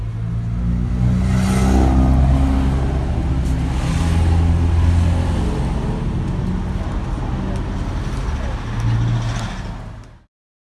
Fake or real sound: real